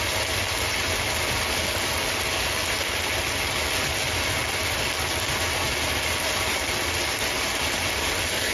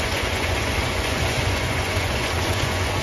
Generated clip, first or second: second